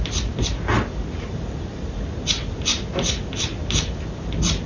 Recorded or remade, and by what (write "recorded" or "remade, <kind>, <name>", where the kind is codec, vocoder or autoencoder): recorded